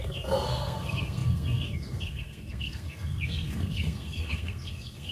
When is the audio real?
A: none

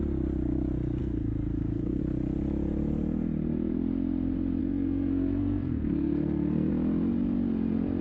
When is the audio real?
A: 0.0-1.0; 2.0-4.6; 6.7-8.0

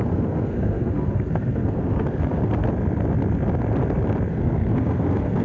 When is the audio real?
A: 2.6-4.3

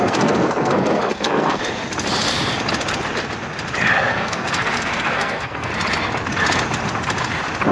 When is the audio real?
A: 1.6-4.1; 5.7-7.7

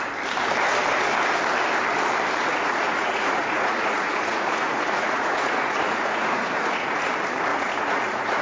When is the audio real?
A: 0.0-2.5; 7.1-7.5

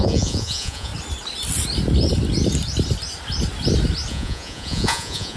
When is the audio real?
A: 0.9-4.1

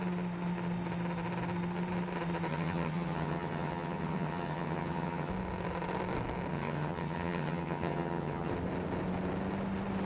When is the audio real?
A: 0.0-2.5; 5.3-6.5; 8.5-10.1